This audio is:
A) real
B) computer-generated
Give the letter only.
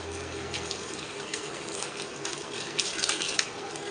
B